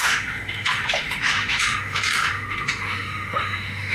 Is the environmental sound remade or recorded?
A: remade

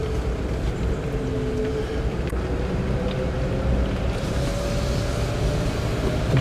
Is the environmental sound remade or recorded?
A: recorded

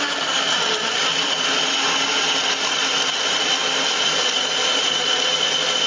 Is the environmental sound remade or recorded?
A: recorded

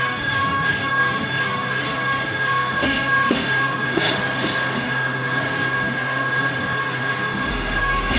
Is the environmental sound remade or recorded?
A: remade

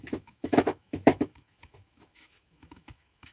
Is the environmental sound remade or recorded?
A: remade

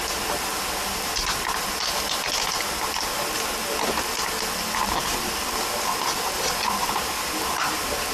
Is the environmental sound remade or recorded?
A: recorded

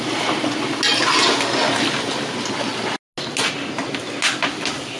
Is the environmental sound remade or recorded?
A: recorded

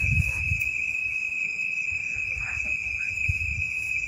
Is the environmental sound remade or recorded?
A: remade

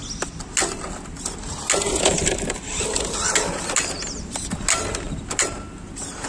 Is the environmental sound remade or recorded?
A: recorded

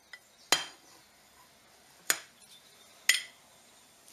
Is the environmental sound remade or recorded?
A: recorded